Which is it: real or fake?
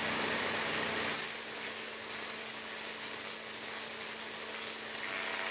real